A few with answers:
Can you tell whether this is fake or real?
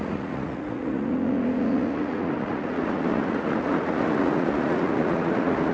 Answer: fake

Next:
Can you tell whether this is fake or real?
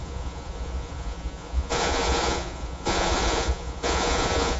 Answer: fake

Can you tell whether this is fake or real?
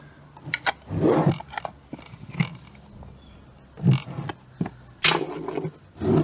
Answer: real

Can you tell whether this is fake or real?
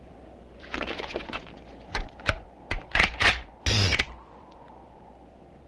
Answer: fake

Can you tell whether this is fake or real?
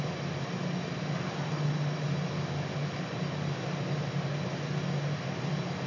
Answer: real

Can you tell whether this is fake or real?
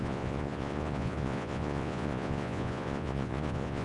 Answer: fake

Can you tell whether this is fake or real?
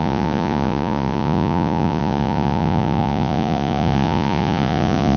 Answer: fake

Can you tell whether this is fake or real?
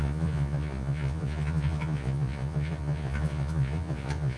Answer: fake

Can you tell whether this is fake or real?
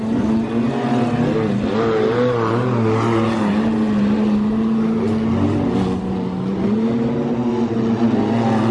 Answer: real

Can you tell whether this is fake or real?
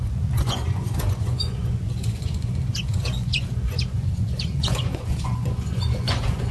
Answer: fake